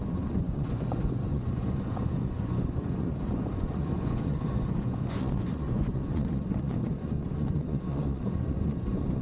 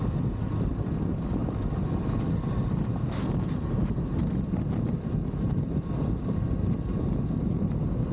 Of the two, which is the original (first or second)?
second